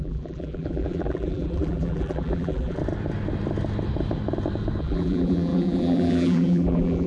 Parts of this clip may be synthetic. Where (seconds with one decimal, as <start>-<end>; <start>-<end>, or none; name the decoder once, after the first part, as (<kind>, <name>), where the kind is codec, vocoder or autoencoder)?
0.0-2.8 (vocoder, BigVGAN v2); 4.8-7.1